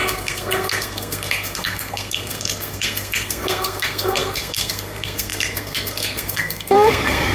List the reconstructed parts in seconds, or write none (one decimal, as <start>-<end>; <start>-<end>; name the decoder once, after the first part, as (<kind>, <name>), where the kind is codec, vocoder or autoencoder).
0.0-7.3 (codec, SNAC)

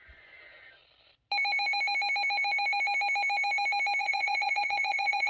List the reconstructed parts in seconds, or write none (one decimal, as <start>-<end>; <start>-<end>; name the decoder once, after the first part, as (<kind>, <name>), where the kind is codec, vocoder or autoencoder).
0.0-0.8 (vocoder, Vocos); 4.0-5.3

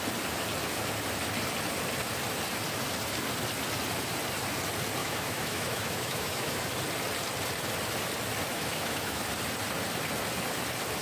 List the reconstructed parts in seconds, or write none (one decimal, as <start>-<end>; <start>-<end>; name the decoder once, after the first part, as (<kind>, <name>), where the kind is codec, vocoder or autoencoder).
5.0-6.6 (autoencoder, DAC-VAE); 8.5-9.2

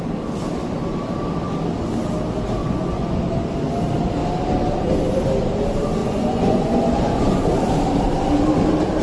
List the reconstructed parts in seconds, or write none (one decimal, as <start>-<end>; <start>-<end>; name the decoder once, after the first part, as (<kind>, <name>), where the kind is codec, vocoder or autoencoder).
2.6-3.2 (vocoder, Vocos); 6.0-7.4

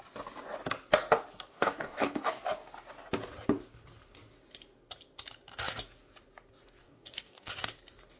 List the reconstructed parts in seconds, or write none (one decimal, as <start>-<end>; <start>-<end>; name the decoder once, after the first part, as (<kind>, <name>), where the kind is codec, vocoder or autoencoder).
1.5-2.4 (codec, DAC); 6.8-7.5